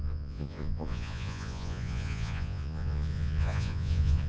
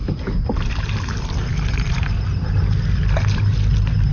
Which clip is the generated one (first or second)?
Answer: first